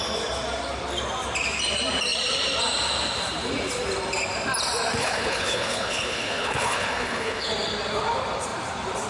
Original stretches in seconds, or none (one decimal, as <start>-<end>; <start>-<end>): 0.0-5.0; 7.5-9.1